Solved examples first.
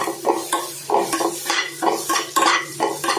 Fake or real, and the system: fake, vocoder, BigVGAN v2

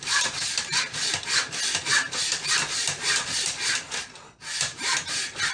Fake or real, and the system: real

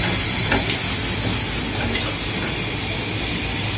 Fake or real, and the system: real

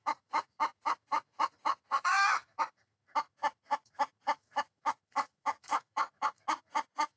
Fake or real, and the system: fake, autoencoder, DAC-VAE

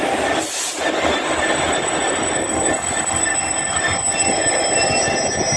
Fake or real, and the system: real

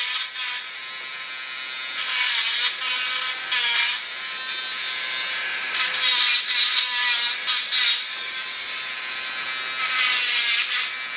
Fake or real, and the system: real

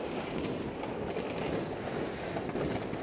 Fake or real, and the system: real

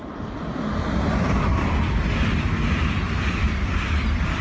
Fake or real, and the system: real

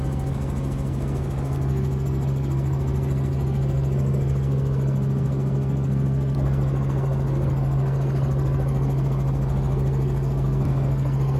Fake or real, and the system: fake, codec, SNAC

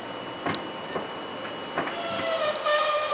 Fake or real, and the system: fake, vocoder, BigVGAN v2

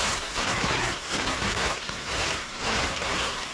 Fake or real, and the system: fake, codec, SNAC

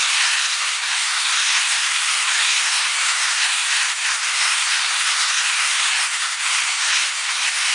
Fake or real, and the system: fake, codec, SNAC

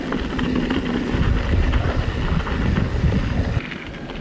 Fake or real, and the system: real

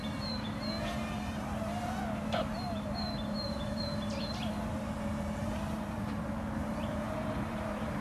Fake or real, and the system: fake, vocoder, BigVGAN v2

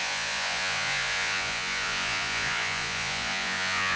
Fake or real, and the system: fake, vocoder, Vocos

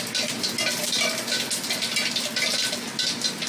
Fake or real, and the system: real